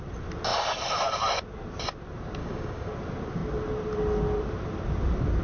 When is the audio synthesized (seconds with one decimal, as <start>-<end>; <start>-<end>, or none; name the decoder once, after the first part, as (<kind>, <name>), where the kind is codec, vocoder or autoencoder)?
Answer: 2.4-2.9 (codec, DAC)